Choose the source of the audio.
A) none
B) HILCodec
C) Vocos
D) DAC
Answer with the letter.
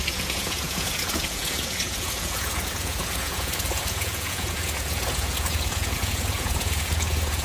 C